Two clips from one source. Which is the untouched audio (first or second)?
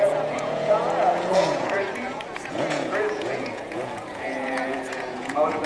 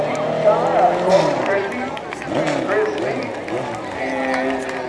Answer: second